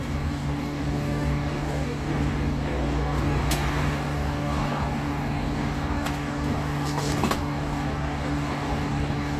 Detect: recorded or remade remade